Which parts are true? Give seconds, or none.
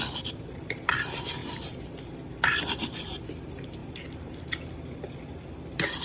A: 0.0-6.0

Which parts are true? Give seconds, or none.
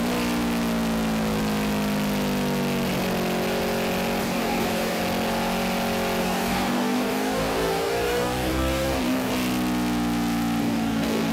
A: 0.0-4.2; 5.0-6.2; 9.3-10.6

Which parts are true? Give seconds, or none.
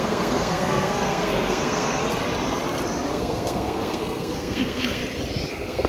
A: 2.0-3.1; 5.0-5.5